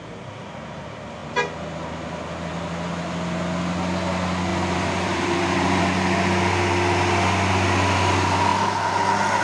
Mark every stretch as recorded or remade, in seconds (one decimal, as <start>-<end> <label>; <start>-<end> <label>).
0.0-4.5 recorded; 4.5-5.8 remade; 5.8-9.4 recorded